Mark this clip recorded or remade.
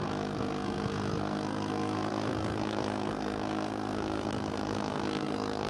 remade